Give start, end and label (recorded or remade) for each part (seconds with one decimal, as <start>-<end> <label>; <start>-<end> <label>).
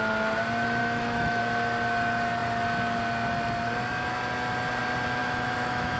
0.0-0.8 recorded; 0.8-1.4 remade; 1.4-5.2 recorded; 5.2-6.0 remade